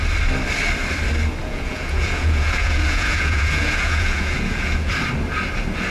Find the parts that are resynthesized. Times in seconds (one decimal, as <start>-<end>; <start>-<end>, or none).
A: 1.4-4.9